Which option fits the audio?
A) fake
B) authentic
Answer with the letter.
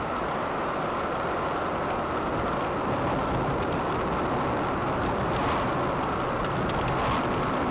B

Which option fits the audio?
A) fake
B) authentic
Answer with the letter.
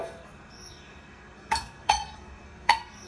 A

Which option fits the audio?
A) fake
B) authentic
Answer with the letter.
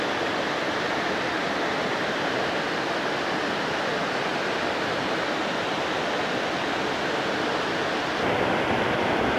B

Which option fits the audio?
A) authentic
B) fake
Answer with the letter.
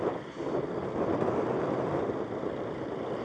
A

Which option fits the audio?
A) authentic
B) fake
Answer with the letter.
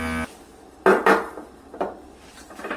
A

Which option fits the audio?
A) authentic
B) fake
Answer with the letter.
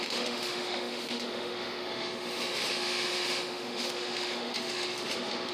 B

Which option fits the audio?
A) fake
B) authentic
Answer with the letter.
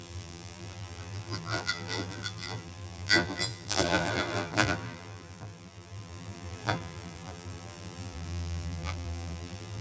A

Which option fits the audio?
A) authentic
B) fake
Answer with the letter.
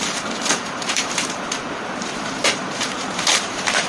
B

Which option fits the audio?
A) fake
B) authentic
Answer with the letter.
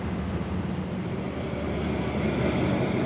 B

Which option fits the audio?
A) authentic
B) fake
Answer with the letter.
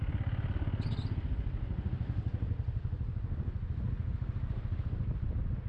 A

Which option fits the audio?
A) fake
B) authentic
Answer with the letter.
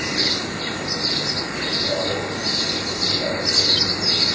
B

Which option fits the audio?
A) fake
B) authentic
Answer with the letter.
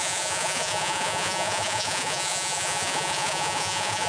A